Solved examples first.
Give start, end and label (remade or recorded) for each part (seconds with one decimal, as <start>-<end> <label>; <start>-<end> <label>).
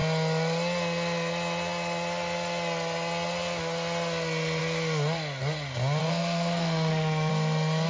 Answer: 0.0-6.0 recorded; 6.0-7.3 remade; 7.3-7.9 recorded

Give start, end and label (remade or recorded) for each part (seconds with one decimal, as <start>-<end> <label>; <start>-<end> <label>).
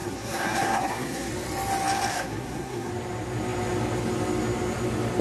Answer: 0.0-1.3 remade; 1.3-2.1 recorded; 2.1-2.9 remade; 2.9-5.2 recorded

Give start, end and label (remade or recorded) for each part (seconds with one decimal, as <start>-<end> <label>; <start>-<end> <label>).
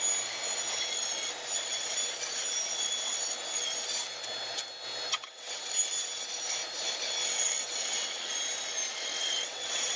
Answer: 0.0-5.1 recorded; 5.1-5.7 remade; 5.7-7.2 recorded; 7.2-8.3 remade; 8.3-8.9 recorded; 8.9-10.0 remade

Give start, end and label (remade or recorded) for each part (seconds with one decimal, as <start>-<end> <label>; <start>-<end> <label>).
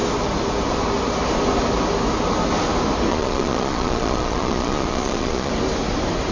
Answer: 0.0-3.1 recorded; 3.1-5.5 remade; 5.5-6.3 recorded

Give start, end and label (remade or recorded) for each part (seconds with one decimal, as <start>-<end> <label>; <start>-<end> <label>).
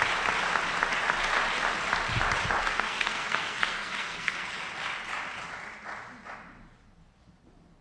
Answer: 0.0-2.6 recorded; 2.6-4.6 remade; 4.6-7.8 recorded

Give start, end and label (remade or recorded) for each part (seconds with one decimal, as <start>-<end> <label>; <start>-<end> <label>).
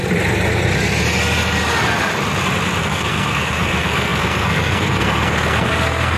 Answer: 0.0-2.8 recorded; 2.8-6.2 remade